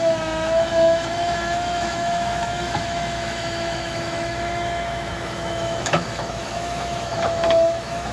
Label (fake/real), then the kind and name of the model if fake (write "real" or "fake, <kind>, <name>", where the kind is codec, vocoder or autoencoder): fake, autoencoder, DAC-VAE